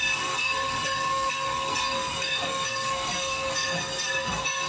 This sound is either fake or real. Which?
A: fake